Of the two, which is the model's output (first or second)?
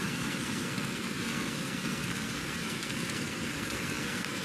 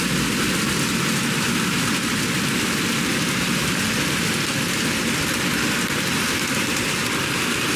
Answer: first